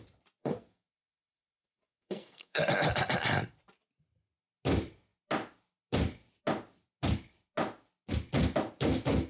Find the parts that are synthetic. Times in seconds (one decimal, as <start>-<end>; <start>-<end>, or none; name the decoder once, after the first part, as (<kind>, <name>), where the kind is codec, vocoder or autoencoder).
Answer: 0.4-2.6 (codec, SNAC)